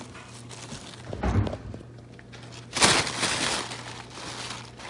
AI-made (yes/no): no